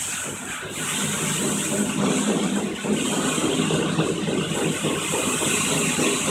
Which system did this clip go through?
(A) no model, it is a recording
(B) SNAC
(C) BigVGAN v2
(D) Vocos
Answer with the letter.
A